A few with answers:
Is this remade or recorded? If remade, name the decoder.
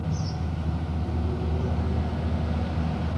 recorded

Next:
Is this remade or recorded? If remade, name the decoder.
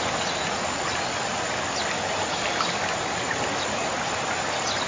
recorded